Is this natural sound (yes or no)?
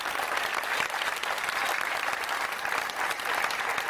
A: yes